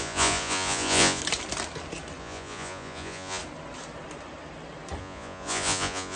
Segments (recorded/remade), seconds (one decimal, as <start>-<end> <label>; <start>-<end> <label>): 0.0-1.2 remade; 1.2-2.2 recorded; 2.2-3.4 remade; 3.4-5.0 recorded; 5.0-6.2 remade